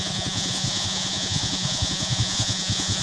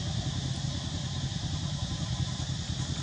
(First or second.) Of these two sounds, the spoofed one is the first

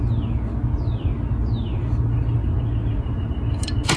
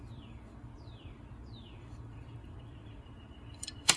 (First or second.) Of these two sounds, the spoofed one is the second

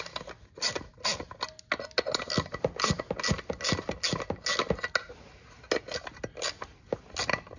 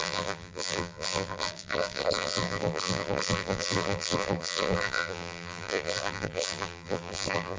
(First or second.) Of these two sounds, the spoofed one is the second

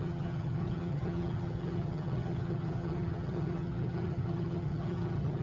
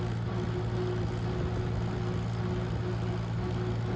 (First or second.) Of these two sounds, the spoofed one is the first